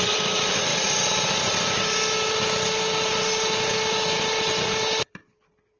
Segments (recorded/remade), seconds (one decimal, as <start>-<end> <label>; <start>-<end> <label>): 0.0-5.8 recorded